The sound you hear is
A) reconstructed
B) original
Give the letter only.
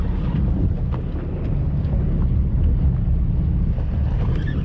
B